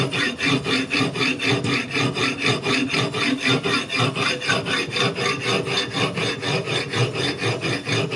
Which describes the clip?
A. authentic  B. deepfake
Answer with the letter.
A